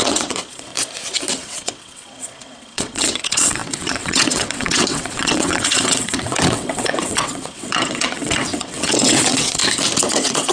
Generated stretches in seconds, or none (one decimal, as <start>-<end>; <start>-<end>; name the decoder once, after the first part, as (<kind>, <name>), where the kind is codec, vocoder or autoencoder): 0.0-0.7 (vocoder, WaveNeXt); 1.3-9.6; 10.1-10.5